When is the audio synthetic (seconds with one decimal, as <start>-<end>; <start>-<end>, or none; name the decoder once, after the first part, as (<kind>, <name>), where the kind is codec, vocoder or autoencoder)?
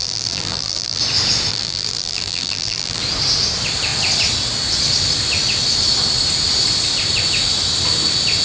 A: 0.0-1.0 (vocoder, BigVGAN v2); 1.5-3.0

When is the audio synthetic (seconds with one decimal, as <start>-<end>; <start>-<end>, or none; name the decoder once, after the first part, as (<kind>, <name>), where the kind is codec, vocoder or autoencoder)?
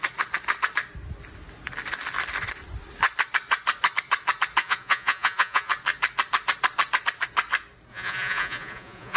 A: 4.6-5.7 (vocoder, Vocos); 7.9-9.2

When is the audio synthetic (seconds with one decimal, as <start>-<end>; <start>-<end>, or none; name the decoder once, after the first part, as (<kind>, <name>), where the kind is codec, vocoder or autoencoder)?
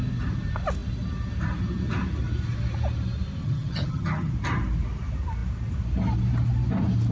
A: 3.4-4.3 (vocoder, HiFi-GAN)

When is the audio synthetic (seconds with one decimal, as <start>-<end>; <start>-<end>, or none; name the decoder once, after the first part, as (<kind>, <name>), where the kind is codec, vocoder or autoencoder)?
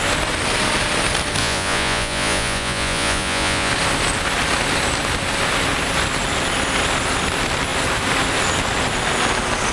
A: 1.4-3.7 (vocoder, Vocos)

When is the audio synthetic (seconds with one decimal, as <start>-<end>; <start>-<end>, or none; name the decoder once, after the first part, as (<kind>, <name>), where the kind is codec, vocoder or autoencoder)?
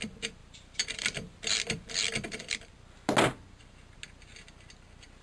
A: 0.4-2.7 (vocoder, BigVGAN v2)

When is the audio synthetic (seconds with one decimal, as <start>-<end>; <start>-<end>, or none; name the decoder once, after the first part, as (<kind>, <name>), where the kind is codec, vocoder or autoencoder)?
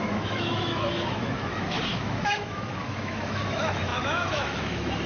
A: 0.0-5.1 (autoencoder, DAC-VAE)